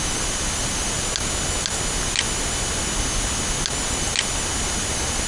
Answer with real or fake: real